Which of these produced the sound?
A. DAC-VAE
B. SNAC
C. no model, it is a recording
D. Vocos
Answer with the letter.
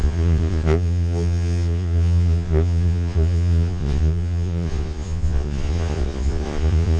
D